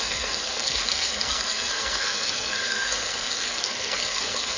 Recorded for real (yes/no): no